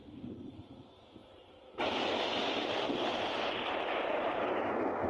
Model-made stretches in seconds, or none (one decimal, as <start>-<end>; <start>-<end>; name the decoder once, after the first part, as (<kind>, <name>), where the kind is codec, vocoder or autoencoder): none